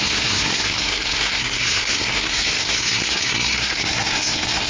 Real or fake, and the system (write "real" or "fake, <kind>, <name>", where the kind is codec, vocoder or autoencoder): fake, codec, SNAC